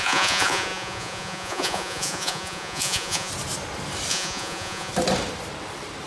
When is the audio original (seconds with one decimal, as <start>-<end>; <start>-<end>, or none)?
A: 3.3-4.1; 4.9-6.1